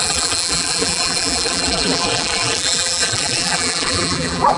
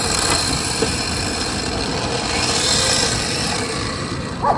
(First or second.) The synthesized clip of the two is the first